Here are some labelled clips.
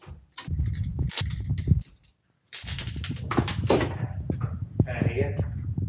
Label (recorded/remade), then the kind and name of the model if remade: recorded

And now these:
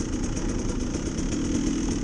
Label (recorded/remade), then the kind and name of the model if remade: recorded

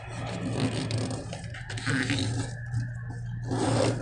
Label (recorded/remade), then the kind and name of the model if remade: recorded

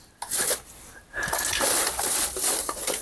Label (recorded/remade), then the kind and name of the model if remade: recorded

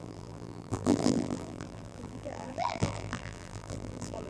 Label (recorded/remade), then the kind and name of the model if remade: remade, vocoder, BigVGAN v2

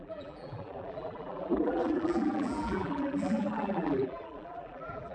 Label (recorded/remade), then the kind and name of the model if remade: remade, vocoder, BigVGAN v2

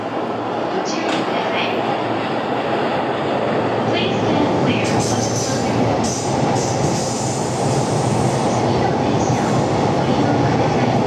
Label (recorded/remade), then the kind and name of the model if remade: recorded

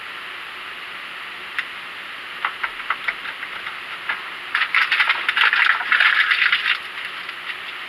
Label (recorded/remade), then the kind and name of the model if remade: recorded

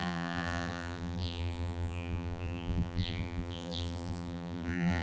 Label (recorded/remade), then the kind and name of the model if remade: remade, vocoder, BigVGAN v2